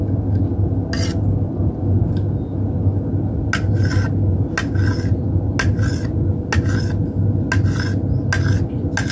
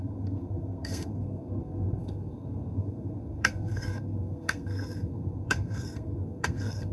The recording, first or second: first